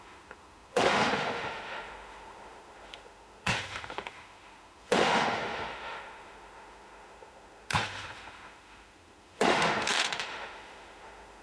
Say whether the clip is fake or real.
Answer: fake